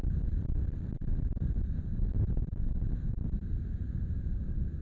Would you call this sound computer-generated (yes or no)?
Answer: no